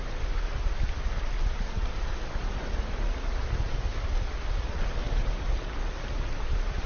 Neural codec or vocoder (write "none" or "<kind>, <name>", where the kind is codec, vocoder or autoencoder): none